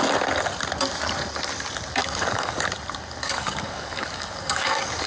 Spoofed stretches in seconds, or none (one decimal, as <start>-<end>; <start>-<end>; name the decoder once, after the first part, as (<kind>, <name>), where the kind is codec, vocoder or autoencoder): 2.0-2.6 (codec, DAC); 3.2-5.1